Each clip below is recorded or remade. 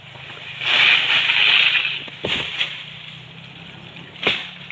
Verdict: recorded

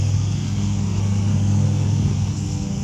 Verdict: remade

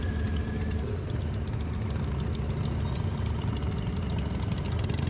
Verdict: recorded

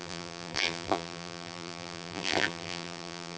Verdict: remade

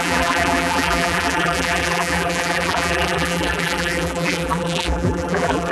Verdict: remade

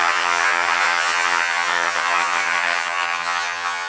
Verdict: remade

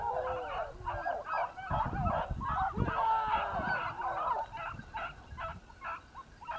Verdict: recorded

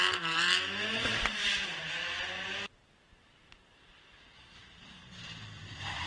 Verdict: remade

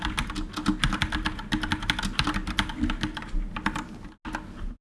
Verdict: recorded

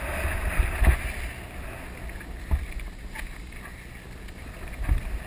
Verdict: recorded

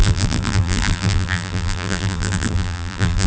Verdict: remade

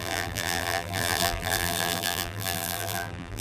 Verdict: remade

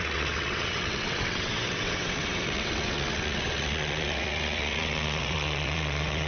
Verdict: remade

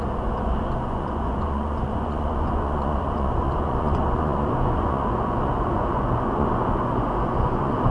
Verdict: remade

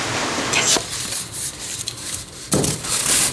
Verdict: remade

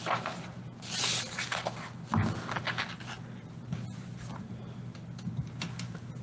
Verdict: recorded